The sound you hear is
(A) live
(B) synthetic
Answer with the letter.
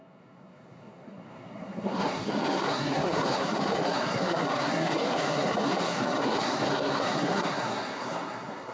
B